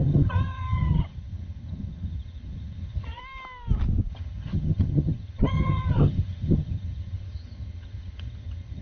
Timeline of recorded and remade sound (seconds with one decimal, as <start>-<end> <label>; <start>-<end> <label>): 0.0-3.2 remade; 3.2-4.1 recorded; 4.1-8.8 remade